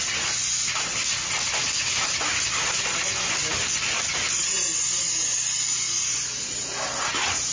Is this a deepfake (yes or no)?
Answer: no